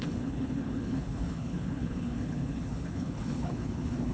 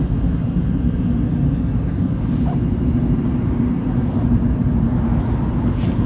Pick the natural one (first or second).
second